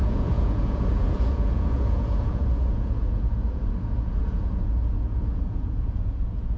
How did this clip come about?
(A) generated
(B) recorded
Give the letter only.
A